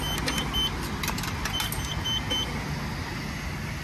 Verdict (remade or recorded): recorded